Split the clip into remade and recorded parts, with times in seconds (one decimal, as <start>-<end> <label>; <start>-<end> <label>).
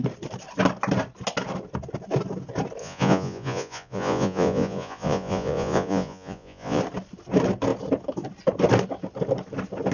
0.0-2.8 recorded; 2.8-6.8 remade; 6.8-9.9 recorded